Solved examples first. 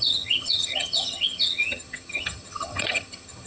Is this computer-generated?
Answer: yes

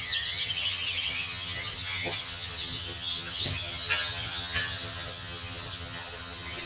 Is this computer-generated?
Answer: yes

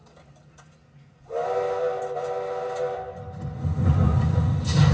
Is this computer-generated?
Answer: no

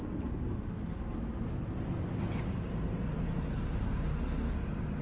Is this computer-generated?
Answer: no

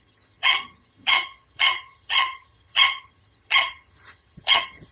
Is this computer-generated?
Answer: yes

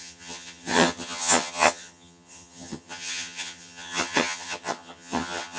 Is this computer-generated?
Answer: yes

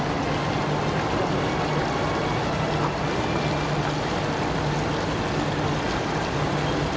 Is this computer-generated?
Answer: no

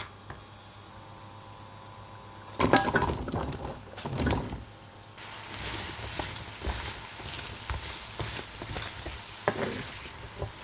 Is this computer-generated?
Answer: no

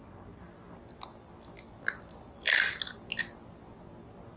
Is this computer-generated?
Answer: no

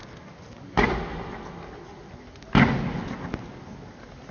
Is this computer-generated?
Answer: no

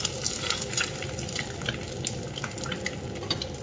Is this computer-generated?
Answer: no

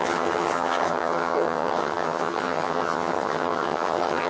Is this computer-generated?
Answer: yes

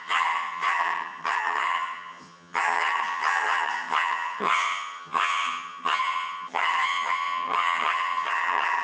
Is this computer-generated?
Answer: yes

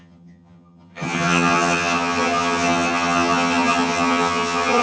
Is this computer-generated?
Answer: yes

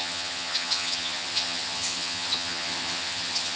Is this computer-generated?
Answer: yes